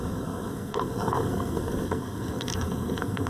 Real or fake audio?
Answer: fake